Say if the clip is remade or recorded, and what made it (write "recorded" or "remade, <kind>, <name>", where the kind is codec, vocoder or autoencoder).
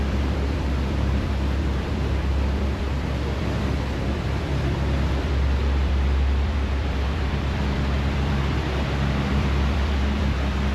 remade, vocoder, BigVGAN v2